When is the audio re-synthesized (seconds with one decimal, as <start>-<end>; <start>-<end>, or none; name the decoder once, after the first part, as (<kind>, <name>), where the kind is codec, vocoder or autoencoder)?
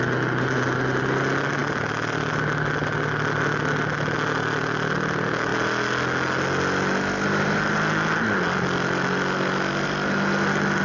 none